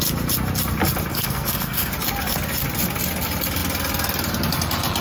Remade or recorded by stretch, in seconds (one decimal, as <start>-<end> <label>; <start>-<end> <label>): 0.0-1.1 recorded; 1.1-1.9 remade; 1.9-5.0 recorded